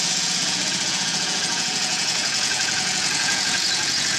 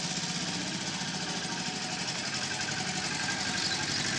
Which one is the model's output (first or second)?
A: first